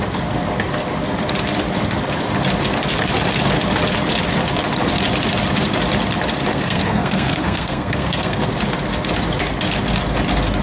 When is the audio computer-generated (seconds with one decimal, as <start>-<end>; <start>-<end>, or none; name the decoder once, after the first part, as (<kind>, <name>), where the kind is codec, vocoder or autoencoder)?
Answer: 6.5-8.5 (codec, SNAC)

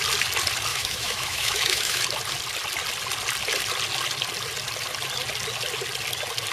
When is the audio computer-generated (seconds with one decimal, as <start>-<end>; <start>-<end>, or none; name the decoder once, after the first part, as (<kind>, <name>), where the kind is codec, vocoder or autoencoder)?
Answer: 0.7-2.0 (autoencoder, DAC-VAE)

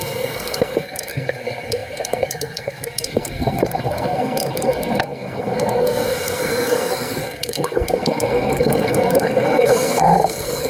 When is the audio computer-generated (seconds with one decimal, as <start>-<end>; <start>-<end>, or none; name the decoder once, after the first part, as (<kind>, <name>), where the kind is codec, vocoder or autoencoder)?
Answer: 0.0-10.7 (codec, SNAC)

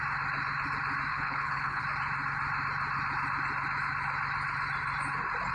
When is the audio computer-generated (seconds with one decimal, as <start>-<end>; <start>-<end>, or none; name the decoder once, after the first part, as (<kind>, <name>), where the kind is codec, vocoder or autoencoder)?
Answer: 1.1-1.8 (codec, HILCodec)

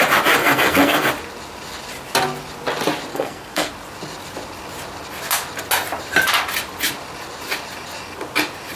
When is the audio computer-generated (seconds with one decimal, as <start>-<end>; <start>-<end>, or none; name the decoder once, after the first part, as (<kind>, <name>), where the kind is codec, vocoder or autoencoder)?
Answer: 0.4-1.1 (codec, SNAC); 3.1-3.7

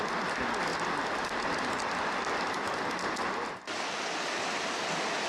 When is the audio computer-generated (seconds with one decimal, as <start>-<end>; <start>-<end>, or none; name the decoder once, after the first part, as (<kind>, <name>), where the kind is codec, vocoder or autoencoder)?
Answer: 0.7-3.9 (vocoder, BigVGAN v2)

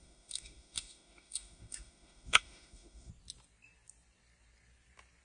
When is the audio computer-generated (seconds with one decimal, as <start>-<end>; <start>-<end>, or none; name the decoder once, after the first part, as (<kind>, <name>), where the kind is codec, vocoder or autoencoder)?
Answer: 0.0-3.1 (autoencoder, DAC-VAE)

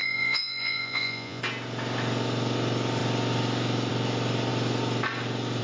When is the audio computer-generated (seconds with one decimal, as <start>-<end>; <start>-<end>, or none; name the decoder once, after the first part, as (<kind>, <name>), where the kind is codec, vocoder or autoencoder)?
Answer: 0.0-1.4 (vocoder, Vocos)